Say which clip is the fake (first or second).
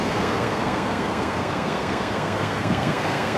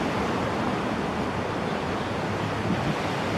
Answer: first